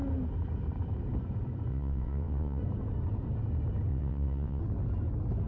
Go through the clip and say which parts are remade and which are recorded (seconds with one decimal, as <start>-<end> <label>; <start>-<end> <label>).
0.0-1.7 recorded; 1.7-2.6 remade; 2.6-3.9 recorded; 3.9-4.6 remade; 4.6-5.5 recorded